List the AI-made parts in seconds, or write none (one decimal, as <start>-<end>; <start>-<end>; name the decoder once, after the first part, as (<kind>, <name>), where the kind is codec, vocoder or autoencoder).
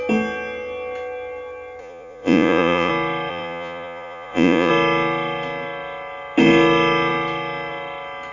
1.8-2.9 (vocoder, Vocos); 3.3-4.7